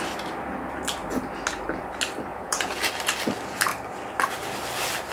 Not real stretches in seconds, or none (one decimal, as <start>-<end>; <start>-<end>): 2.3-2.8